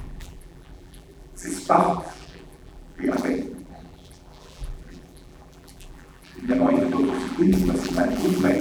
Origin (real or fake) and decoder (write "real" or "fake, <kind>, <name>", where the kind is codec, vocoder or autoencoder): fake, vocoder, BigVGAN v2